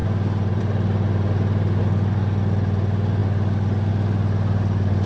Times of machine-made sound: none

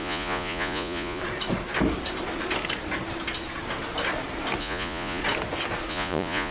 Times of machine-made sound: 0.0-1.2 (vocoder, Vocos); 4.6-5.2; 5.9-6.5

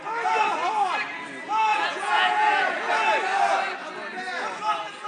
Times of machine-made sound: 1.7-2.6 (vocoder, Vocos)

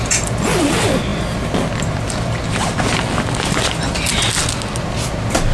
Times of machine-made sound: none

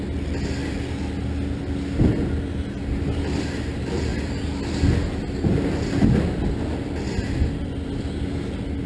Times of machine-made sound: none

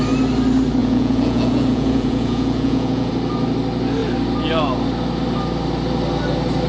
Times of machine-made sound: 0.8-3.1 (vocoder, Vocos)

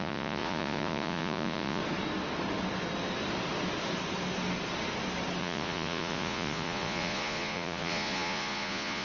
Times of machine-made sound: 0.0-1.8 (vocoder, Vocos); 5.4-9.0

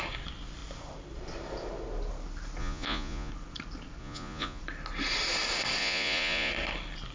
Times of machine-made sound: 2.6-3.3 (vocoder, Vocos); 4.0-4.6; 5.8-6.5